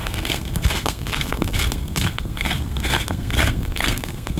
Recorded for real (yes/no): no